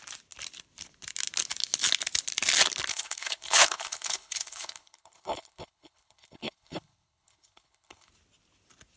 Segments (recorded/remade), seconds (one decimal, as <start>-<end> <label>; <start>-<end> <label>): 0.0-2.9 recorded; 2.9-8.1 remade; 8.1-9.0 recorded